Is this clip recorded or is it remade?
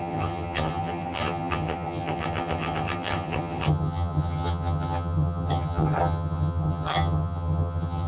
remade